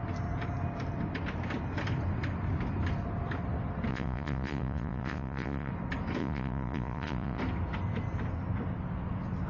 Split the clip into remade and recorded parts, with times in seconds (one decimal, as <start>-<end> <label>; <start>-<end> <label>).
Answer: 0.0-3.9 recorded; 3.9-5.7 remade; 5.7-6.2 recorded; 6.2-7.4 remade; 7.4-9.5 recorded

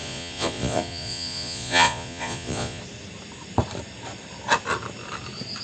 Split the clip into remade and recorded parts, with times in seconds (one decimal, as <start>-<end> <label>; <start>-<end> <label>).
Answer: 0.0-2.8 remade; 2.8-5.6 recorded